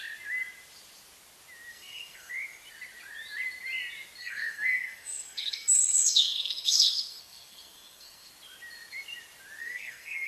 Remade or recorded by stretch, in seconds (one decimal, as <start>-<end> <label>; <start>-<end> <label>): 0.0-1.7 recorded; 1.7-2.3 remade; 2.3-4.2 recorded; 4.2-8.3 remade; 8.3-9.6 recorded; 9.6-10.3 remade